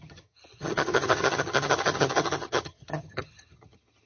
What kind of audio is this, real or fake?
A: fake